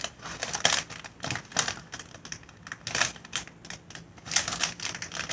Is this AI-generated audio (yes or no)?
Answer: no